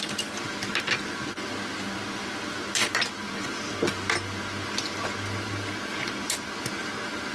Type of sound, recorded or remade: recorded